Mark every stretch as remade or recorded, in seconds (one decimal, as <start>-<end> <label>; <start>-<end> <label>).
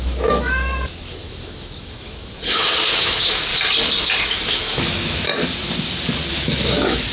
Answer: 0.0-3.5 remade; 3.5-4.2 recorded; 4.2-5.3 remade; 5.3-6.3 recorded; 6.3-7.1 remade